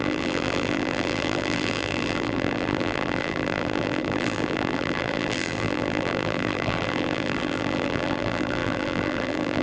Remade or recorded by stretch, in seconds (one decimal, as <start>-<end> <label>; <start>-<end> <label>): 0.0-9.6 remade